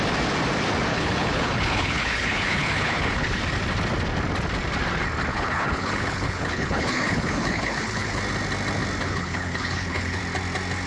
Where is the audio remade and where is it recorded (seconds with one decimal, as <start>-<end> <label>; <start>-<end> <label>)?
0.0-0.9 recorded; 0.9-3.4 remade; 3.4-5.3 recorded; 5.3-8.2 remade; 8.2-9.0 recorded; 9.0-10.2 remade; 10.2-10.9 recorded